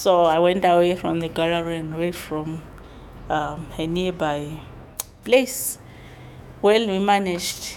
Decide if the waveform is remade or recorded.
remade